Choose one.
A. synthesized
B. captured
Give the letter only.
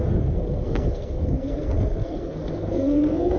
A